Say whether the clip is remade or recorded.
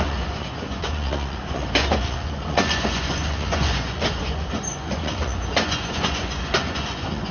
remade